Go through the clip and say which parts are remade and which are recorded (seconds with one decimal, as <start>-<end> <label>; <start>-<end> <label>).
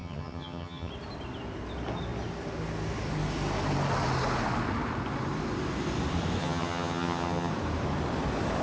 0.0-0.9 remade; 0.9-6.4 recorded; 6.4-7.5 remade; 7.5-8.6 recorded